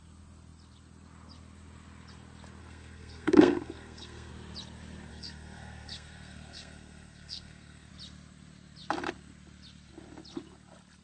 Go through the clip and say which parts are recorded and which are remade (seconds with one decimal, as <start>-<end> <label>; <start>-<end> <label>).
0.0-2.6 recorded; 2.6-4.3 remade; 4.3-5.1 recorded; 5.1-7.9 remade; 7.9-11.0 recorded